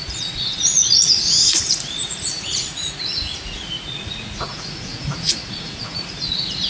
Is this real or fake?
fake